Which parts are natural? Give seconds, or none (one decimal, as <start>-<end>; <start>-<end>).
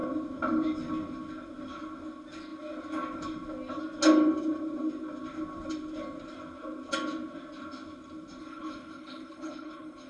0.0-8.4